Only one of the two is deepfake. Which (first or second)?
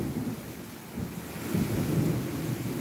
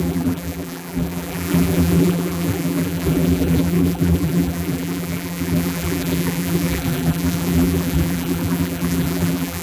second